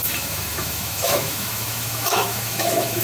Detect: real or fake fake